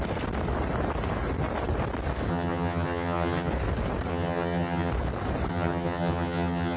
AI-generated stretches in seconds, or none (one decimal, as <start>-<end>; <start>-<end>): 2.3-3.5; 4.1-4.9; 5.5-6.8